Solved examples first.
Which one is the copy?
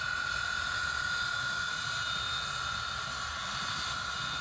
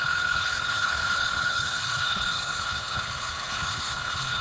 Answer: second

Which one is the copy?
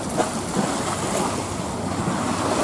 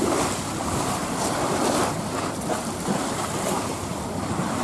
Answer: second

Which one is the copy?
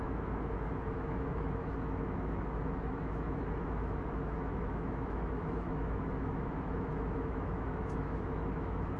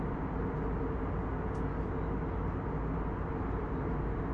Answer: first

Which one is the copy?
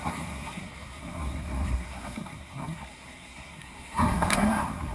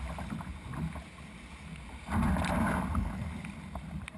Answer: first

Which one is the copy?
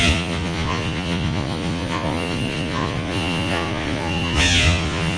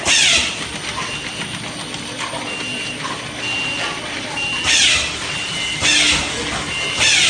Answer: first